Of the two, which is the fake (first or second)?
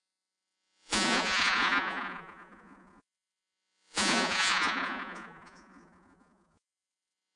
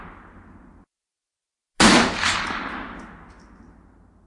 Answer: first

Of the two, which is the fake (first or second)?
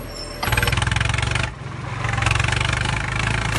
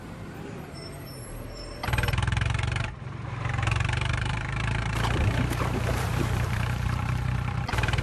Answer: second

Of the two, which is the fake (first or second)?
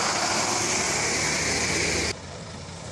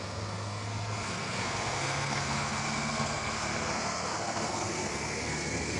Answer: second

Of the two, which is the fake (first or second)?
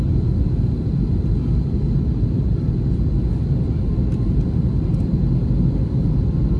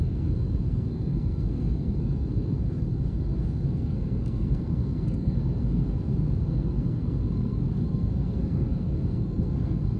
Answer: second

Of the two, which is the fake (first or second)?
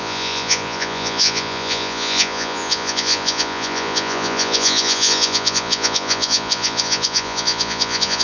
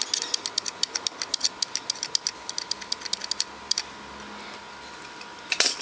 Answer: first